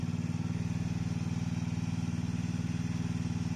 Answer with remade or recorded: recorded